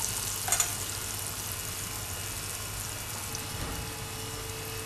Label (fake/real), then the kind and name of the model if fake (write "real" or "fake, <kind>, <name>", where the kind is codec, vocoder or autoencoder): real